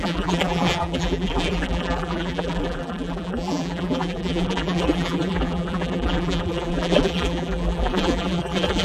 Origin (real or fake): fake